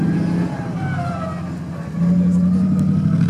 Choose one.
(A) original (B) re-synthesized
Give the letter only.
A